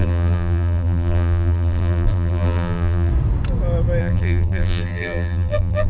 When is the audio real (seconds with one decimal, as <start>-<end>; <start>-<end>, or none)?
3.1-4.0

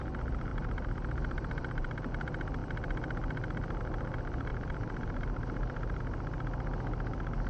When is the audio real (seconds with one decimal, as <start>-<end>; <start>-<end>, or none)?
0.0-0.5; 2.1-4.5; 6.0-7.5